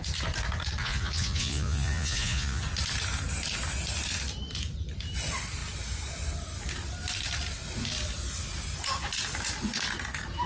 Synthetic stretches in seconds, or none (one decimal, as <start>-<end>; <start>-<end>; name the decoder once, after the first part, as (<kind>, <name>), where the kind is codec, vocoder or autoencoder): 0.8-2.6 (vocoder, Vocos)